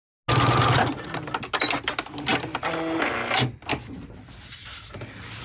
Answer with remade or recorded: recorded